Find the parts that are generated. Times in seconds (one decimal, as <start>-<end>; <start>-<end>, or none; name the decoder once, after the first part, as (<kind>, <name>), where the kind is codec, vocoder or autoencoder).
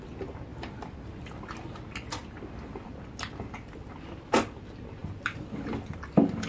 0.5-1.4 (vocoder, BigVGAN v2); 5.0-5.6